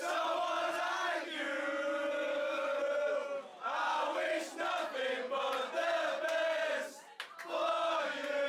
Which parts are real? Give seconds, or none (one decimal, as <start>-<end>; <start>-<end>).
0.0-2.3; 2.8-8.5